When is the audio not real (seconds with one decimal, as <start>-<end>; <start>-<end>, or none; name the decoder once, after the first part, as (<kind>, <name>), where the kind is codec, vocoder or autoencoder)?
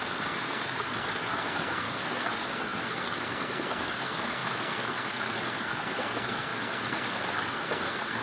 0.0-8.2 (codec, SNAC)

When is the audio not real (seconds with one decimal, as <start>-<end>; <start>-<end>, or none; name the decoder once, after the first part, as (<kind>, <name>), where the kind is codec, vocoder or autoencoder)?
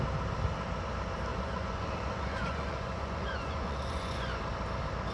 1.3-4.4 (vocoder, Vocos)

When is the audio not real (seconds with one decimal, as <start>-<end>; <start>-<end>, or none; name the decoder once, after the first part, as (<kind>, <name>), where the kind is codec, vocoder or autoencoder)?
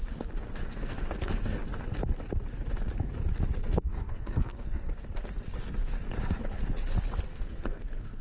0.6-1.6 (codec, SNAC); 3.6-4.9; 7.3-8.2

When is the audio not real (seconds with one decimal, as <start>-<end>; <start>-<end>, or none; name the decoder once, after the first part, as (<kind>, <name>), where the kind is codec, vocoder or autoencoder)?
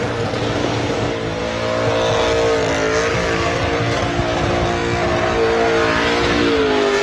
0.6-1.4 (codec, DAC); 3.1-3.6